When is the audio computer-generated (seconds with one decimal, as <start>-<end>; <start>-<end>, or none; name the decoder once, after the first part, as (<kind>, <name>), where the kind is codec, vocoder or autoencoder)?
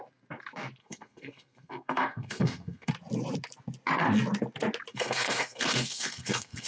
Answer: 0.8-2.9 (codec, SNAC); 4.9-6.7